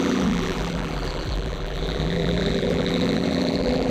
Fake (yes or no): yes